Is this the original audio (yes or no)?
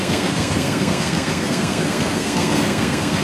no